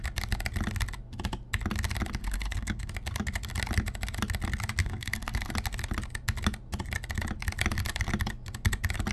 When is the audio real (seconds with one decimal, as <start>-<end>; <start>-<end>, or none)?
0.0-2.2; 2.9-4.8; 5.5-9.1